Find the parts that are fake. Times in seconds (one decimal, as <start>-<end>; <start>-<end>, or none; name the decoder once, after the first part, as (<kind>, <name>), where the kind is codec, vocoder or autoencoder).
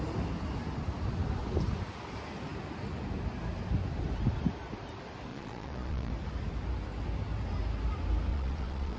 5.3-6.1 (vocoder, Vocos); 8.3-9.0